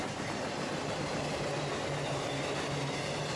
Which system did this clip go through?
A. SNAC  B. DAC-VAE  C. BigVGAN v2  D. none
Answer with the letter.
D